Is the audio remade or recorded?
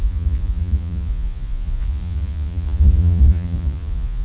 remade